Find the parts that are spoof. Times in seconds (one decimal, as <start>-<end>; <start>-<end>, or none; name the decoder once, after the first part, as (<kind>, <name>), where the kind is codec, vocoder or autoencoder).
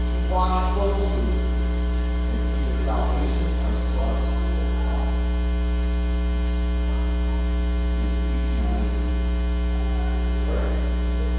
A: 0.0-4.0 (codec, DAC); 8.6-9.1